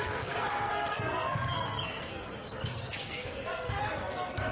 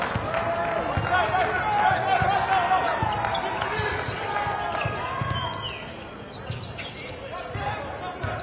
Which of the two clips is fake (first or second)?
first